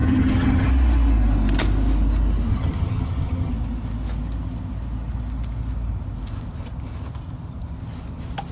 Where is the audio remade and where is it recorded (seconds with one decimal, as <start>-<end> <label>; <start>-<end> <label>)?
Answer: 0.0-0.7 remade; 0.7-2.5 recorded; 2.5-3.5 remade; 3.5-8.5 recorded